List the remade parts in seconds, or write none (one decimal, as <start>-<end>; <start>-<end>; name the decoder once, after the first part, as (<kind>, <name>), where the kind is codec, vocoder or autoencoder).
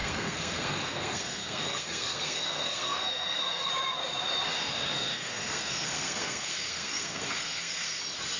0.0-3.7 (codec, SNAC); 4.5-8.0